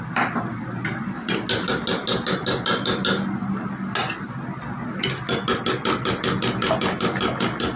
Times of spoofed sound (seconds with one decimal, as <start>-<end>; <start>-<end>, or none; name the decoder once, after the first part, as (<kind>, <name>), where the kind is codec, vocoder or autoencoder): none